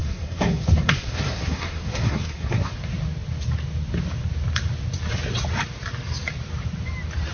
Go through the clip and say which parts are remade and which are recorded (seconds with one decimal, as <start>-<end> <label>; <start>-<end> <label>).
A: 0.0-2.7 remade; 2.7-7.3 recorded

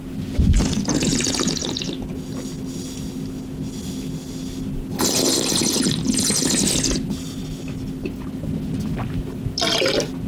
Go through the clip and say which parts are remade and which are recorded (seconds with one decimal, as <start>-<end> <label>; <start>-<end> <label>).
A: 0.0-10.3 recorded